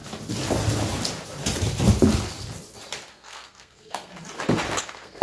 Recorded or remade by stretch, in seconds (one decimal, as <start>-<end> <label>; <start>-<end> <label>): 0.0-3.1 recorded; 3.1-4.1 remade; 4.1-4.8 recorded; 4.8-5.2 remade